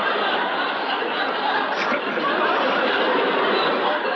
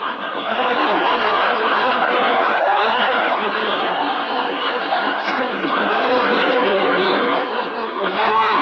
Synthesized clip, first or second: second